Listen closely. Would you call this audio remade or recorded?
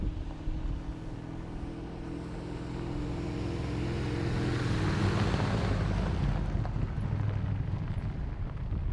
recorded